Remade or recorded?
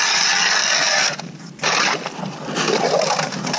recorded